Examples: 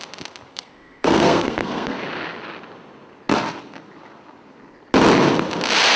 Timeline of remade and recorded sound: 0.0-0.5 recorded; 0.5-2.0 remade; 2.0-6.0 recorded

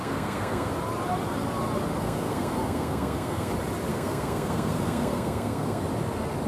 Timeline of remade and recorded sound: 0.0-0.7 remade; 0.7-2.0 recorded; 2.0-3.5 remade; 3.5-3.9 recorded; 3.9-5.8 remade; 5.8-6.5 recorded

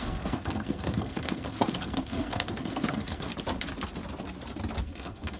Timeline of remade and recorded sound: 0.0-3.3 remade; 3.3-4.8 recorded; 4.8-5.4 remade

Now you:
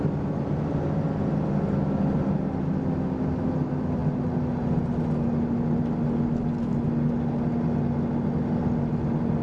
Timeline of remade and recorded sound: 0.0-9.4 recorded

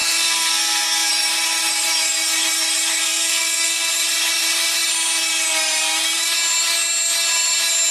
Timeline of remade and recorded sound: 0.0-1.1 remade; 1.1-3.0 recorded; 3.0-3.9 remade; 3.9-7.9 recorded

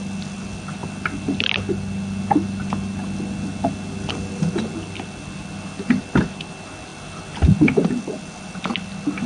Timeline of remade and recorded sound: 0.0-9.3 recorded